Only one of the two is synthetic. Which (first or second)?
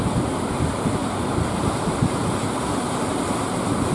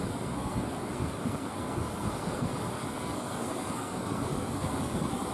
second